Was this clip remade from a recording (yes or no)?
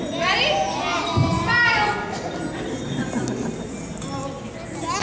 no